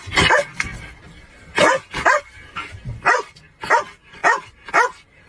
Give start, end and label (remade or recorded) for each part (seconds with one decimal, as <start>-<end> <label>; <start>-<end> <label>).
0.0-5.3 recorded

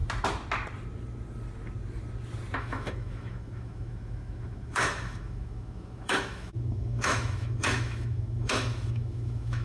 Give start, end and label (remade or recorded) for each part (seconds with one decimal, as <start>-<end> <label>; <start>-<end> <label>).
0.0-2.6 recorded; 2.6-9.6 remade

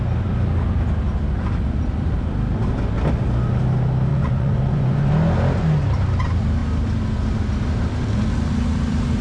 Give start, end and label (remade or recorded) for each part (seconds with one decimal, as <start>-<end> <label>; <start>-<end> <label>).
0.0-4.1 recorded; 4.1-5.1 remade; 5.1-9.2 recorded

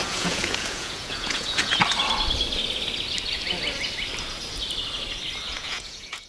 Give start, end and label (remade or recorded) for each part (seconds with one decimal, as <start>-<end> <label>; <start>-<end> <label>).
0.0-1.8 remade; 1.8-5.5 recorded; 5.5-6.3 remade

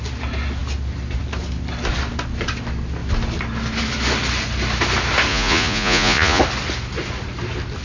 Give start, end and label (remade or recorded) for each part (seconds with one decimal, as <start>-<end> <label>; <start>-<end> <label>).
0.0-5.3 recorded; 5.3-6.4 remade; 6.4-7.8 recorded